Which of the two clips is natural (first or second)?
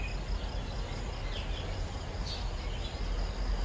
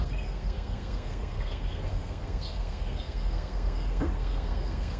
first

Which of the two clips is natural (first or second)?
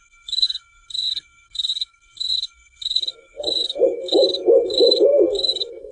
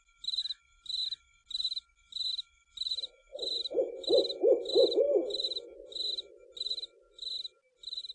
second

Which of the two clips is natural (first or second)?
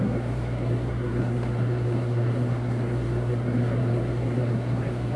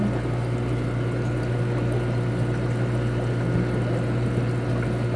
second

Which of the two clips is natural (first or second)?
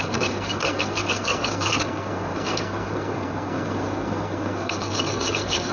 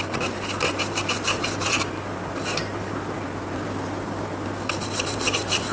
second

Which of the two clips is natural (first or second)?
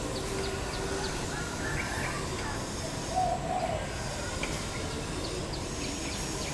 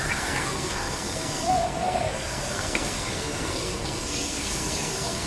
first